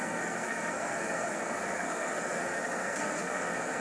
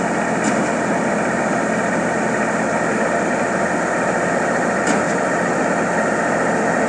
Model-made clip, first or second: first